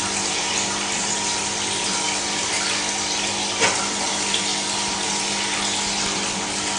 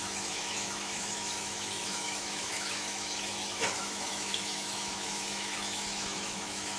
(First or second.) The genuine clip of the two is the first